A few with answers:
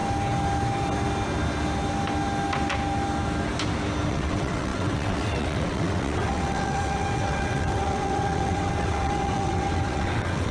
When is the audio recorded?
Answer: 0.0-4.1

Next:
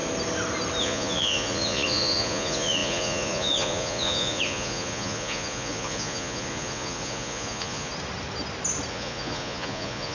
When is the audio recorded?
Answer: 0.0-0.8; 7.9-8.9

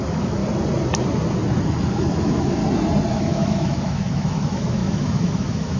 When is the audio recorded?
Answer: 0.4-1.6; 2.6-3.1

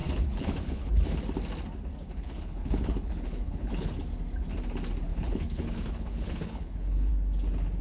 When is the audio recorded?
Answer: 0.9-2.0; 3.9-5.1; 7.1-7.8

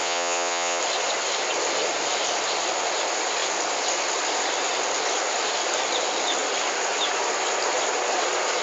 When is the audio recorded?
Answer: 0.8-8.6

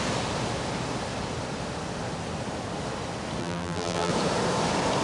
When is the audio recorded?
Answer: 0.0-3.4; 4.1-5.0

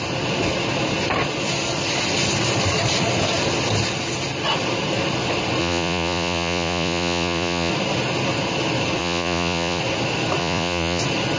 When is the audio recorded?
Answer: 0.0-5.6; 7.7-9.0; 9.8-10.4; 11.0-11.4

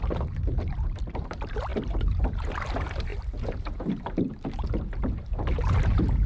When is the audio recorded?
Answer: none